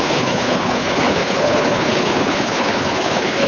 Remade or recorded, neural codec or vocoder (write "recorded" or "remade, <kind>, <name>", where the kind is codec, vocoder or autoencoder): remade, codec, HILCodec